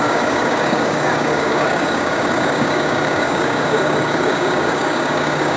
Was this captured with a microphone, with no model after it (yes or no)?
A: no